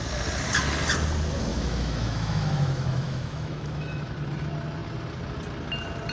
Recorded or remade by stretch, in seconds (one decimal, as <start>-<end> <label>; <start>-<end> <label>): 0.0-1.5 recorded; 1.5-4.1 remade; 4.1-6.1 recorded

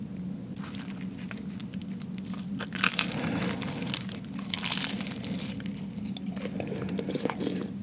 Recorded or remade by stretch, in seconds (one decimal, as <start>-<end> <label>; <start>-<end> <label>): 0.0-7.8 recorded